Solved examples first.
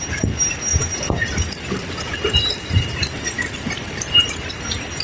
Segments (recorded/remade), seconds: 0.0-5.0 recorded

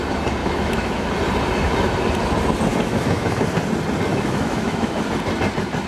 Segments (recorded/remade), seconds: 0.0-0.4 recorded; 0.4-1.1 remade; 1.1-2.7 recorded; 2.7-3.3 remade; 3.3-4.1 recorded; 4.1-5.0 remade; 5.0-5.9 recorded